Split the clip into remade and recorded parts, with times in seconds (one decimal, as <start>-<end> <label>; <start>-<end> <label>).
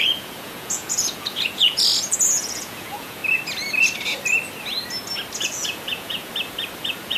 0.0-3.2 remade; 3.2-5.4 recorded; 5.4-6.3 remade; 6.3-6.8 recorded; 6.8-7.2 remade